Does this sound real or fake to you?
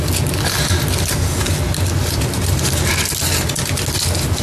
real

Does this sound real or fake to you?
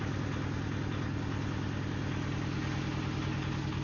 real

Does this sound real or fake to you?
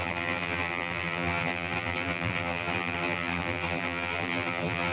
fake